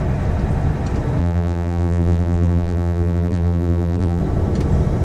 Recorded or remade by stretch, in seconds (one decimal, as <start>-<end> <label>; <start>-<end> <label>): 0.0-1.2 recorded; 1.2-4.2 remade; 4.2-5.0 recorded